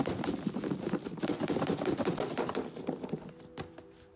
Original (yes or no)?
yes